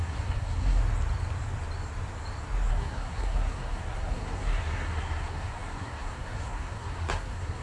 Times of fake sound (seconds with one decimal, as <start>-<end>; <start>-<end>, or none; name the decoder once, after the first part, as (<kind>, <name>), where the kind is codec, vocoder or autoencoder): 0.0-0.8 (codec, SNAC); 2.7-7.6